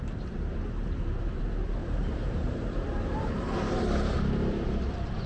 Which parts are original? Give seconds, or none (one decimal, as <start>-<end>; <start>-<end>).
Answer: 0.0-0.5; 1.4-1.8